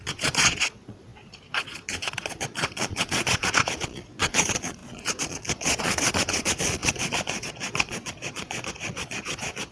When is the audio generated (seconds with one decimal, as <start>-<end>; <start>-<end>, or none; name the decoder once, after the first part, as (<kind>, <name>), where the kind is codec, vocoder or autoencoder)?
0.0-9.7 (vocoder, Vocos)